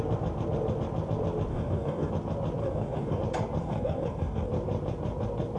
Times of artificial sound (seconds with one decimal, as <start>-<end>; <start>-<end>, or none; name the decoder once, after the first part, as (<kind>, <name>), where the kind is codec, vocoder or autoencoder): 1.5-2.1 (codec, DAC); 2.6-3.2; 3.6-4.5